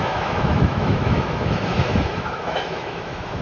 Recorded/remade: remade